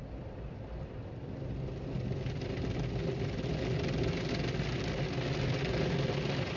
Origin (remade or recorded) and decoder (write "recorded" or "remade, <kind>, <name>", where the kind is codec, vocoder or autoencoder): recorded